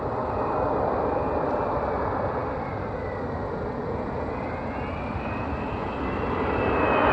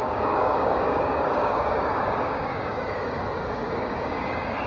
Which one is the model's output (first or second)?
second